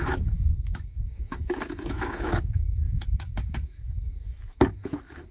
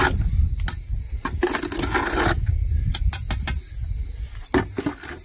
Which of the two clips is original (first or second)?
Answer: second